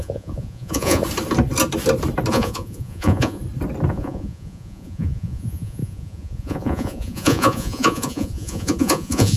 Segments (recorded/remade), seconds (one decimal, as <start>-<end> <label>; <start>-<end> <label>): 0.0-1.0 remade; 1.0-2.3 recorded; 2.3-3.4 remade; 3.4-3.9 recorded; 3.9-9.4 remade

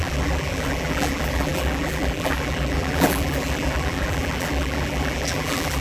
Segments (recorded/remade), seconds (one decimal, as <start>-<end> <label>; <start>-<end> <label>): 0.0-5.8 remade

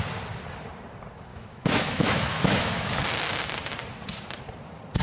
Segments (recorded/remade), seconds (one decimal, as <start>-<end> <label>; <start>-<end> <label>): 0.0-1.3 recorded; 1.3-3.0 remade; 3.0-5.0 recorded

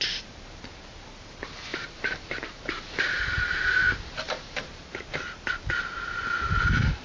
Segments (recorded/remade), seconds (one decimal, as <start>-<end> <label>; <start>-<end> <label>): 0.0-1.7 recorded; 1.7-5.6 remade; 5.6-7.0 recorded

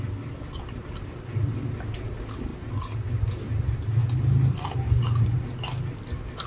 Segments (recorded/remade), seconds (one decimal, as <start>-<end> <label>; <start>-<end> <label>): 0.0-6.5 recorded